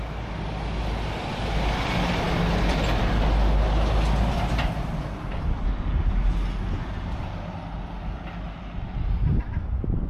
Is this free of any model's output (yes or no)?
yes